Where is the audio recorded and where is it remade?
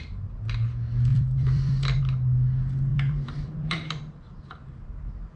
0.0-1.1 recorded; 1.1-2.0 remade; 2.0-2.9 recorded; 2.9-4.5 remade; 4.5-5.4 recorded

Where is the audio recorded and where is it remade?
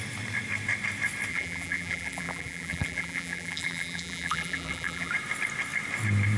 0.0-1.3 recorded; 1.3-5.1 remade; 5.1-6.4 recorded